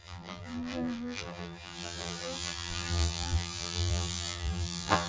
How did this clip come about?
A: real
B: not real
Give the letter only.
B